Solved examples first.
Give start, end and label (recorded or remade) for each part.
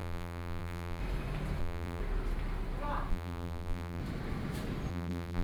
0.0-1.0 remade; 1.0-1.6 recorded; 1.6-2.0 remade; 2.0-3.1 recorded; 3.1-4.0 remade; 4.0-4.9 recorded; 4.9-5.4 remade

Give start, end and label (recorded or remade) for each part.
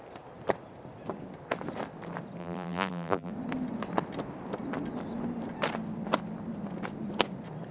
0.0-2.4 recorded; 2.4-3.3 remade; 3.3-7.7 recorded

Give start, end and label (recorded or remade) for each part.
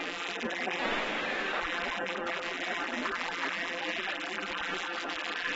0.0-0.8 remade; 0.8-1.6 recorded; 1.6-5.6 remade